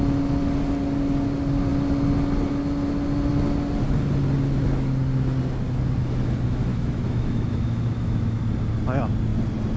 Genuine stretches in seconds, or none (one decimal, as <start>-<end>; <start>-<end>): 0.0-6.7; 8.4-9.8